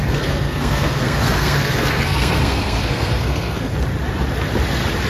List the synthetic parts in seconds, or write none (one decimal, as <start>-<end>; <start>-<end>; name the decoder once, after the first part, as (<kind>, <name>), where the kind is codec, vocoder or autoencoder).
0.0-3.7 (codec, SNAC)